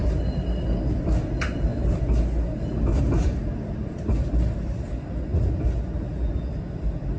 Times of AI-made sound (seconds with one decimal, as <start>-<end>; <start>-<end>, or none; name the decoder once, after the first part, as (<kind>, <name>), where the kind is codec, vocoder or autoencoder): 2.9-4.8 (vocoder, BigVGAN v2)